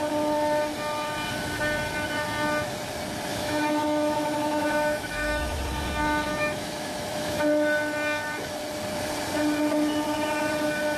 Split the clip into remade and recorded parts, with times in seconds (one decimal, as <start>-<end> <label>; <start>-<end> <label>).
0.0-3.3 recorded; 3.3-5.6 remade; 5.6-6.3 recorded; 6.3-7.4 remade; 7.4-11.0 recorded